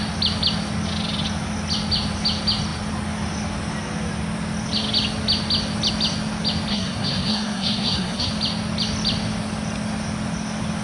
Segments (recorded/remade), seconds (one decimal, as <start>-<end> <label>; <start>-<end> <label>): 0.0-6.7 recorded; 6.7-8.3 remade; 8.3-10.8 recorded